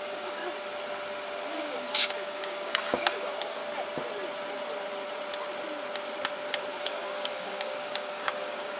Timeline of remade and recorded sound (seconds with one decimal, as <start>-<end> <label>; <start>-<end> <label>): 0.0-0.4 remade; 0.4-1.5 recorded; 1.5-3.6 remade; 3.6-6.8 recorded; 6.8-8.8 remade